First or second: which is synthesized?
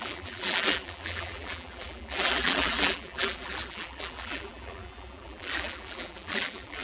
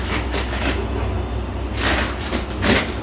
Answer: first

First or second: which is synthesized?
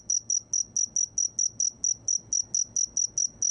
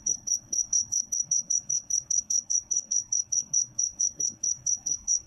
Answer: second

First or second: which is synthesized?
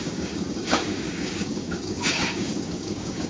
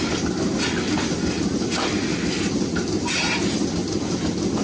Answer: first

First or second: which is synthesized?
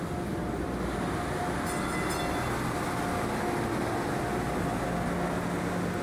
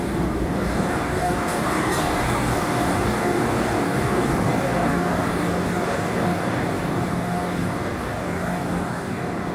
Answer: second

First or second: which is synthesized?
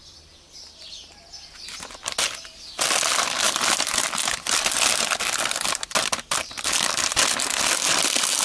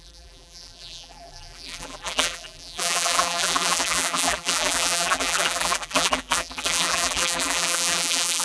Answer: second